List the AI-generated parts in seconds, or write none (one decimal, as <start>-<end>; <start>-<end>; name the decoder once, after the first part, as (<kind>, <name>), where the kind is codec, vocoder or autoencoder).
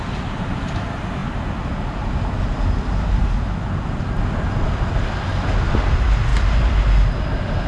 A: none